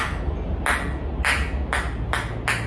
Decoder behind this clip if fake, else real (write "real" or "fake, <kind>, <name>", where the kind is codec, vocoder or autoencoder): real